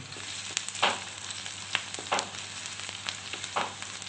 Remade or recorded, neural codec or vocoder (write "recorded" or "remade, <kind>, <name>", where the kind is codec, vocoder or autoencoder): remade, vocoder, BigVGAN v2